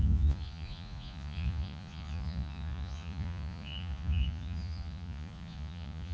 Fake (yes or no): yes